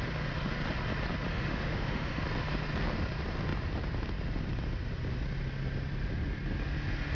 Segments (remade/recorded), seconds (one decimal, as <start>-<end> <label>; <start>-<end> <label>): 0.0-1.3 recorded; 1.3-2.2 remade; 2.2-7.1 recorded